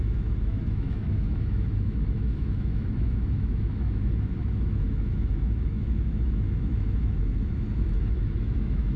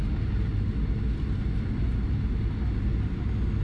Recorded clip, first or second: second